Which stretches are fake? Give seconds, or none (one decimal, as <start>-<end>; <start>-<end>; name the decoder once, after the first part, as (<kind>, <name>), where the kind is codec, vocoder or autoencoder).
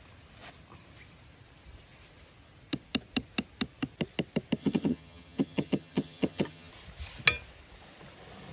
4.6-6.7 (vocoder, HiFi-GAN)